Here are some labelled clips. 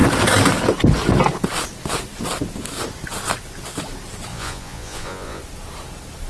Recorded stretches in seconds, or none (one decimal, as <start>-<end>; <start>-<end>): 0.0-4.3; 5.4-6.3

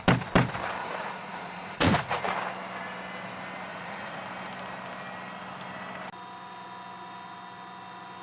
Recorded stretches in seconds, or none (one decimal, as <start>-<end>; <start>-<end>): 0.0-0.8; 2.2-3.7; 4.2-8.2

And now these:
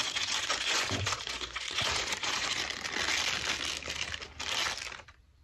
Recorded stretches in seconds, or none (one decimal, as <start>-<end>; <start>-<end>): 2.6-5.4

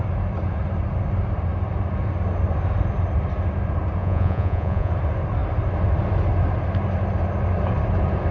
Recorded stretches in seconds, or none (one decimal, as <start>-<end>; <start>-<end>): 0.0-4.0; 4.9-8.3